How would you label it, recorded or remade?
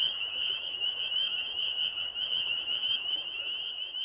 remade